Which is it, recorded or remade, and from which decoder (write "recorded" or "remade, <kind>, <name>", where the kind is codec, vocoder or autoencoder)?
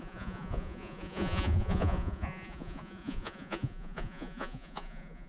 remade, vocoder, Vocos